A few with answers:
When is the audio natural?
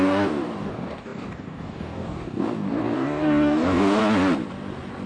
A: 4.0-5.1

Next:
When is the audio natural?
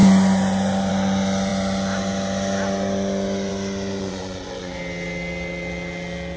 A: 0.0-4.0; 4.8-6.4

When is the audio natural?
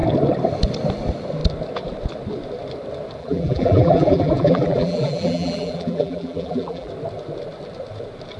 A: 0.0-3.2; 6.9-8.4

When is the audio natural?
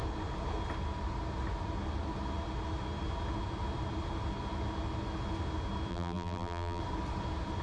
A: 0.0-5.9; 6.8-7.6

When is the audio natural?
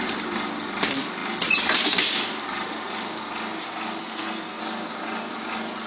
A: 0.0-4.0; 4.6-5.9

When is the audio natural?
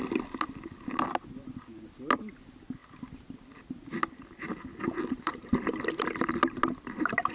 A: 0.0-7.3